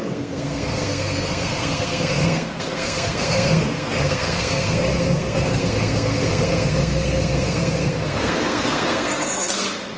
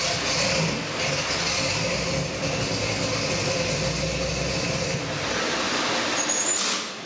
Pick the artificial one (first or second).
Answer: first